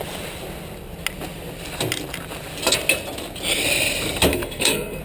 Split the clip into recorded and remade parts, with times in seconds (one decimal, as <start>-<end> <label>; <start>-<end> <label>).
0.0-4.3 recorded; 4.3-5.0 remade